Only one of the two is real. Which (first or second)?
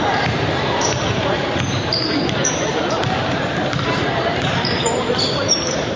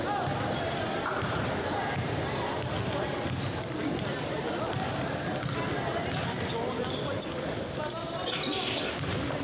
second